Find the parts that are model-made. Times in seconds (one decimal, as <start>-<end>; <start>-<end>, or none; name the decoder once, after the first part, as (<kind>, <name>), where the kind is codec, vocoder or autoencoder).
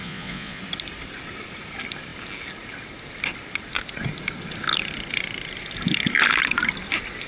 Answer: 0.0-0.6 (vocoder, Vocos)